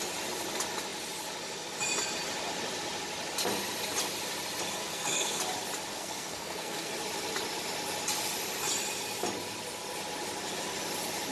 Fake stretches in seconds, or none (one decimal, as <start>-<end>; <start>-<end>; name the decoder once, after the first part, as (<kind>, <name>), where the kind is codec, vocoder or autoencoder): 4.8-5.4 (codec, SNAC); 5.9-6.9